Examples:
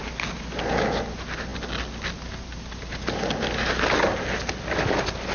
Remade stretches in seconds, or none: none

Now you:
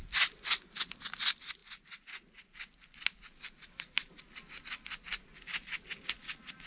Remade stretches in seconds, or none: none

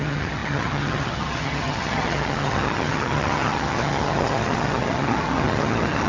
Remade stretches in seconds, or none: 0.0-6.1 (vocoder, HiFi-GAN)

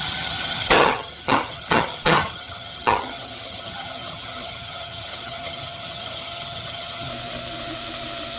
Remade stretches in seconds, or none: 0.0-7.1 (vocoder, HiFi-GAN)

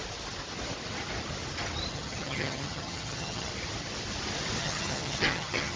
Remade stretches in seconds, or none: 1.9-3.5 (vocoder, HiFi-GAN); 4.6-5.8

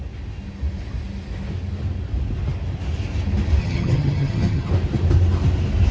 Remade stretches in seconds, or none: 3.6-4.7 (vocoder, HiFi-GAN)